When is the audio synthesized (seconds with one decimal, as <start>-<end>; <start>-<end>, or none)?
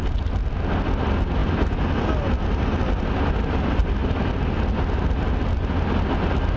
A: none